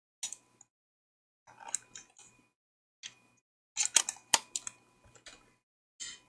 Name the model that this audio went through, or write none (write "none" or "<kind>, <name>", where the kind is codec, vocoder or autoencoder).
none